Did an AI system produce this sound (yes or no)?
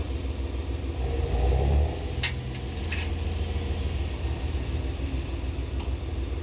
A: no